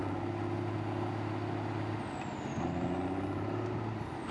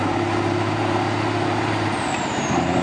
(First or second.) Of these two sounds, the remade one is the second